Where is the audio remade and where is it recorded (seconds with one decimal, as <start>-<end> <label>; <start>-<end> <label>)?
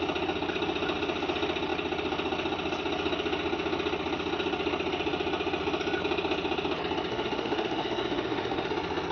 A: 0.0-7.1 recorded; 7.1-8.7 remade; 8.7-9.1 recorded